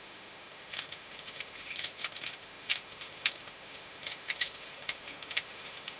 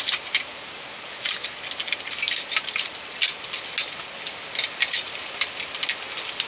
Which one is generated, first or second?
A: first